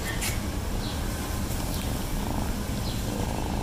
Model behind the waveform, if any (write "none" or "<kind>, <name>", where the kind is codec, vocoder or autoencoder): none